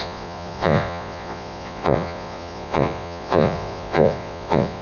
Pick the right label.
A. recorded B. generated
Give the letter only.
B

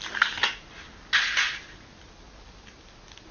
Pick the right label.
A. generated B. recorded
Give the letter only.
B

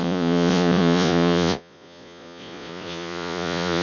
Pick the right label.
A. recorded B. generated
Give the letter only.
B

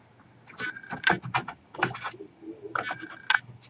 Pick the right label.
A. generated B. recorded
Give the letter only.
B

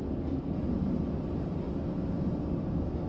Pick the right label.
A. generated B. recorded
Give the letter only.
B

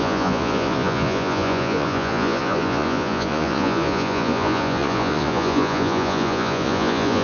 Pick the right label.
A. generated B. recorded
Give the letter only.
A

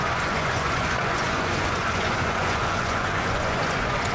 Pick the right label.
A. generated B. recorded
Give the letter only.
A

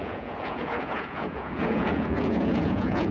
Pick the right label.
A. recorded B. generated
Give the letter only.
B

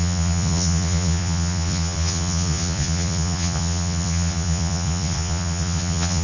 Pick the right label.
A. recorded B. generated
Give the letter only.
B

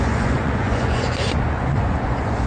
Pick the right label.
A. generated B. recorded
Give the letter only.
A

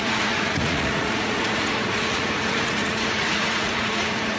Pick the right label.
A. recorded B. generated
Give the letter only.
B